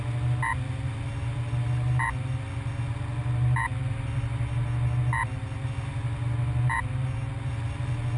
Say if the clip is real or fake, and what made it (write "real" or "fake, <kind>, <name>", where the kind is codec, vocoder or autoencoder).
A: real